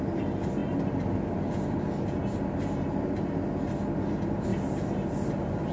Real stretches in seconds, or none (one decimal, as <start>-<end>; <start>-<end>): 0.0-5.7

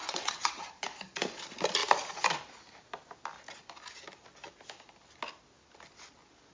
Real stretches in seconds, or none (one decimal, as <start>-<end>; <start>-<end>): 0.6-6.5

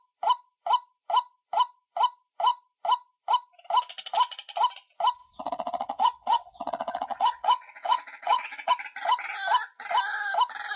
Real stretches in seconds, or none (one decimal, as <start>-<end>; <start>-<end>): 0.0-5.2; 8.7-10.8

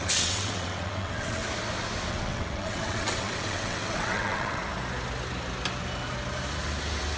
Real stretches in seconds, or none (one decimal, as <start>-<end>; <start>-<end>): 1.4-2.1; 4.6-7.2

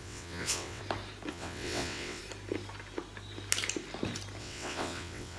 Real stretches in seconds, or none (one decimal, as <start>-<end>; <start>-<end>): 0.8-1.3; 2.2-4.4

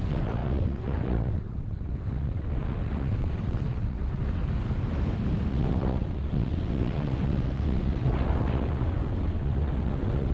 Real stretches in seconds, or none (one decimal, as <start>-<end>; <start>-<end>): 4.4-5.5

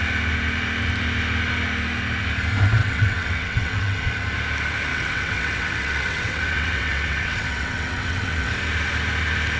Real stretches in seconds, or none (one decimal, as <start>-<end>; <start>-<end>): 0.0-2.8; 4.0-4.9; 8.5-9.6

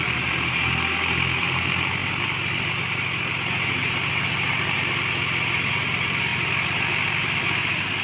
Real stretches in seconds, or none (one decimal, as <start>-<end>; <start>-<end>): 0.0-8.0